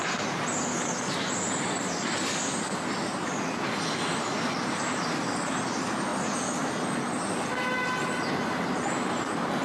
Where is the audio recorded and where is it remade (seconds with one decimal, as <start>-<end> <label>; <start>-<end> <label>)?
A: 0.0-9.6 recorded